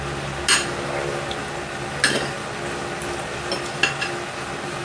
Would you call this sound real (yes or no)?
yes